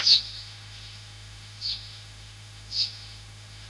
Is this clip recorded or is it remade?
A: remade